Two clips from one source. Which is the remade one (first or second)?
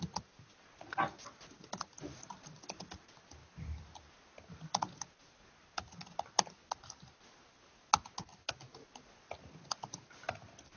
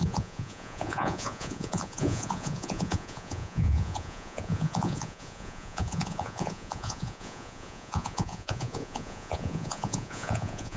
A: second